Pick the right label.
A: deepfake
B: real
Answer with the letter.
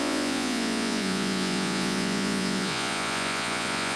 A